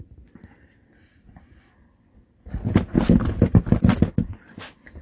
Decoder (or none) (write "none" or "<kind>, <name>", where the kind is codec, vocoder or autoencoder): vocoder, BigVGAN v2